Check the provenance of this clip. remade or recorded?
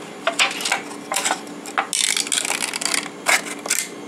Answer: recorded